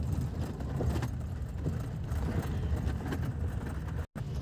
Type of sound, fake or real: real